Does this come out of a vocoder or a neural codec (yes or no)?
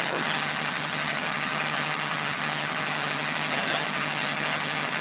yes